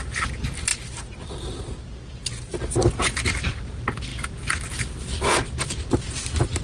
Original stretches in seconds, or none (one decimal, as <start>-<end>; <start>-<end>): 0.0-6.6